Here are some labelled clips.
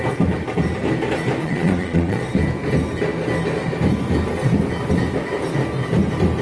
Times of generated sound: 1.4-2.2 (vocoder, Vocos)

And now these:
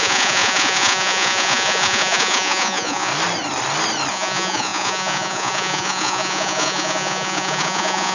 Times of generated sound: 0.0-3.1 (vocoder, Vocos); 4.1-8.1

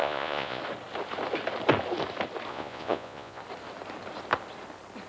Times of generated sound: 0.0-0.6 (vocoder, Vocos); 2.5-3.4